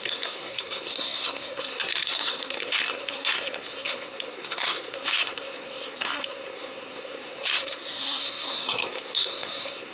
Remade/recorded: remade